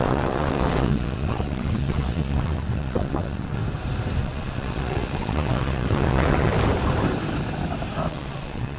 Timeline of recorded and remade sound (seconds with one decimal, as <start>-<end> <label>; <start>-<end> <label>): 0.0-3.6 remade; 3.6-4.2 recorded; 4.2-6.5 remade; 6.5-8.1 recorded; 8.1-8.8 remade